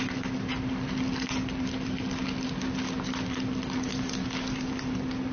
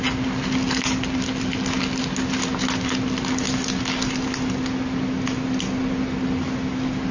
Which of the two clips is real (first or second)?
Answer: second